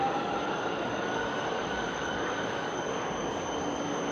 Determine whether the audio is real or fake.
fake